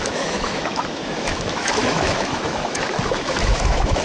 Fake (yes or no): yes